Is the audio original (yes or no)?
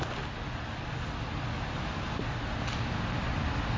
yes